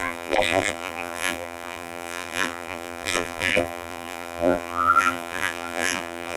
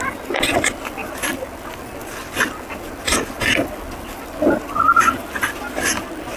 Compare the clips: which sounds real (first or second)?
second